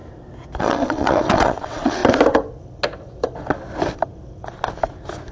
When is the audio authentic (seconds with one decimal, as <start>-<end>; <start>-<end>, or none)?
0.0-0.6; 2.0-5.3